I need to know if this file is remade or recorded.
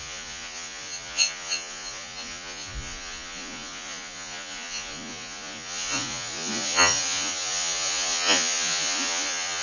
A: remade